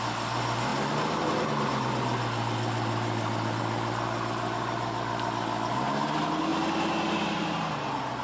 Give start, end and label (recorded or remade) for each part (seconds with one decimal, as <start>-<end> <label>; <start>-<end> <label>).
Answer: 0.0-8.2 recorded